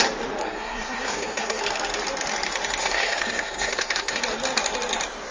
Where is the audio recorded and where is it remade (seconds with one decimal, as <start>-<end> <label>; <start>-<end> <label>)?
0.0-0.4 recorded; 0.4-1.6 remade; 1.6-2.8 recorded; 2.8-4.2 remade; 4.2-5.3 recorded